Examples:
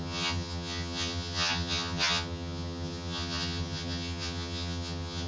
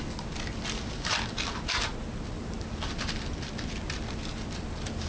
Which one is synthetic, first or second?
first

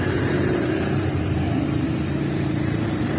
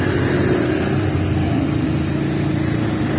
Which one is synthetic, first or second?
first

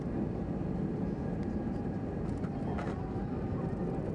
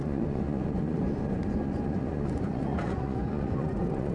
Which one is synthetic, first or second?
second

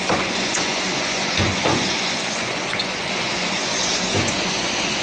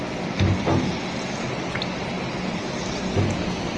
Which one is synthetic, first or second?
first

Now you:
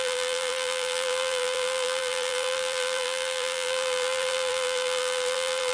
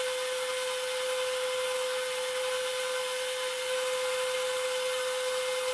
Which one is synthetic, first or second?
first